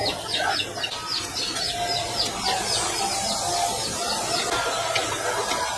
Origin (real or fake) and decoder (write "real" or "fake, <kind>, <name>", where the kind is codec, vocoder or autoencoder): real